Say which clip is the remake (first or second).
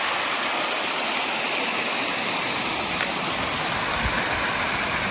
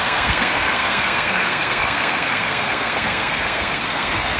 second